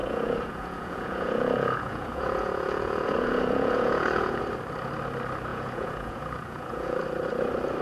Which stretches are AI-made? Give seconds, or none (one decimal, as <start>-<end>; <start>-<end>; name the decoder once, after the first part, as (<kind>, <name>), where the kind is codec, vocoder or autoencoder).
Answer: 0.0-4.4 (vocoder, Vocos); 5.5-7.0